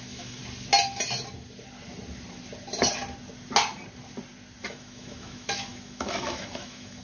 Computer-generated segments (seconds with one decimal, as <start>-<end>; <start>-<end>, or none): 0.0-0.4; 4.6-7.0